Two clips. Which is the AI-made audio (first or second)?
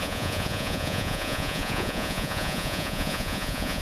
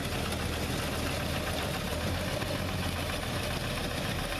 first